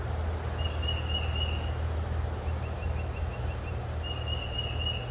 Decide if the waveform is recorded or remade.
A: recorded